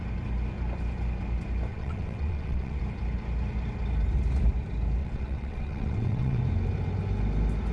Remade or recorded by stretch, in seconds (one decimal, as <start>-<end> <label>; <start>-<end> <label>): 0.0-1.7 recorded; 1.7-2.8 remade; 2.8-5.0 recorded; 5.0-6.4 remade; 6.4-7.7 recorded